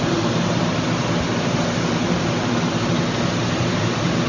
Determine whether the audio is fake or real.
fake